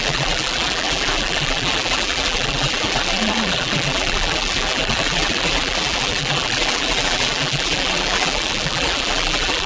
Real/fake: fake